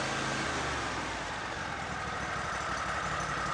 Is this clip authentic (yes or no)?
yes